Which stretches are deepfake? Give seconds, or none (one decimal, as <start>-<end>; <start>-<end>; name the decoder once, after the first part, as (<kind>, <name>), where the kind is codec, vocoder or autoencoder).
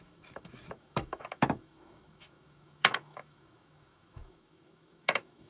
0.0-5.5 (autoencoder, DAC-VAE)